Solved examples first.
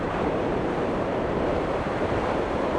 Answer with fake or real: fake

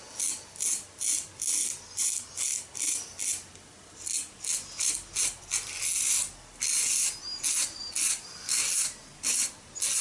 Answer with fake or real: real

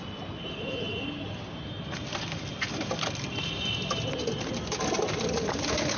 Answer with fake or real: real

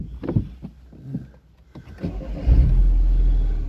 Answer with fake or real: real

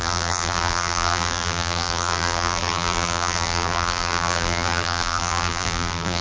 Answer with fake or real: fake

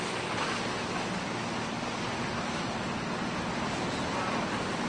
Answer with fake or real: fake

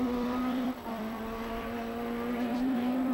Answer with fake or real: fake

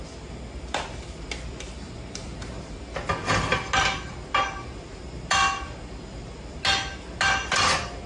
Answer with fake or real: real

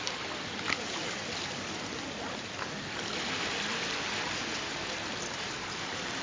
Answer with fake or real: fake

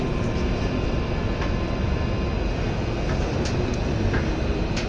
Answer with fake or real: real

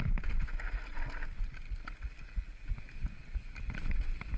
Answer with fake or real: real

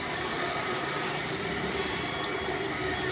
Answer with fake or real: fake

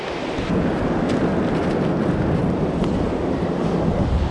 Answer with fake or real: real